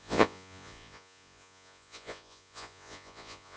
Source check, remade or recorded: remade